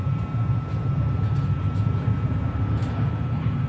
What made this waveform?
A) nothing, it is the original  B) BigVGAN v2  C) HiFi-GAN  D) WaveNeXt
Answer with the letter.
B